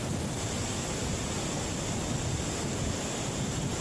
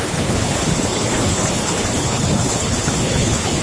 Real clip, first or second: first